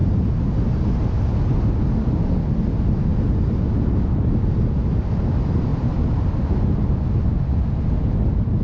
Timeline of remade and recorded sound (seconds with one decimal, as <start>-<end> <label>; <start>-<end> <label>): 0.0-5.7 recorded; 5.7-6.3 remade; 6.3-8.6 recorded